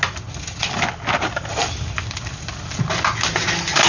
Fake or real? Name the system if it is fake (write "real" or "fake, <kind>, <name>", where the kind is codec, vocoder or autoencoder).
real